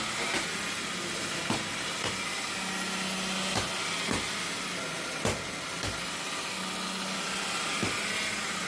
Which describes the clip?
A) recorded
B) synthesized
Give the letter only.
A